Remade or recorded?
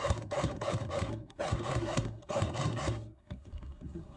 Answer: remade